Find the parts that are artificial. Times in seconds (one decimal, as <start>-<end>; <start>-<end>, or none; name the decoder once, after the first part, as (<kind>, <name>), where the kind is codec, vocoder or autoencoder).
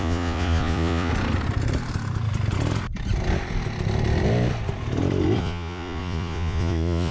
0.0-1.1 (vocoder, Vocos); 5.4-7.1